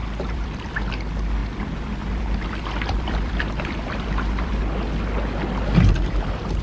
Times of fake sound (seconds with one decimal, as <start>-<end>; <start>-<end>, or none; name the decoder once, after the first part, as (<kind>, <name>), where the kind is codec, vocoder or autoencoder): 0.0-0.7 (vocoder, BigVGAN v2); 1.4-4.6